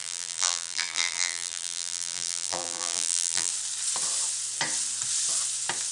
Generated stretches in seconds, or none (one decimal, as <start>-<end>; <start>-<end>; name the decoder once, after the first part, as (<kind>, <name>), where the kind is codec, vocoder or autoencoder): 0.0-3.5 (vocoder, BigVGAN v2)